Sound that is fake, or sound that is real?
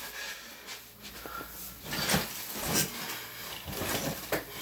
real